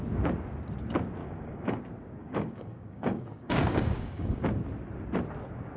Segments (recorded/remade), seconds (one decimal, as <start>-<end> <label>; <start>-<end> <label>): 0.0-1.2 recorded; 1.2-1.8 remade; 1.8-2.2 recorded; 2.2-4.4 remade; 4.4-5.8 recorded